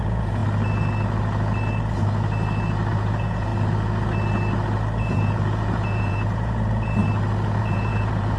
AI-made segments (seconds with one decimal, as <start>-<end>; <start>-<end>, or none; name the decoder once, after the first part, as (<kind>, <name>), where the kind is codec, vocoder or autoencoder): 0.0-0.4 (vocoder, Vocos); 2.9-3.5; 5.0-7.0; 7.6-8.4